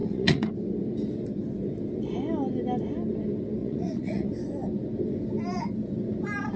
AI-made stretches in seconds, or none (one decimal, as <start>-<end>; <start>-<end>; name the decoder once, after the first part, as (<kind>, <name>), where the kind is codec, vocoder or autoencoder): 0.0-0.5 (vocoder, Vocos); 3.6-4.3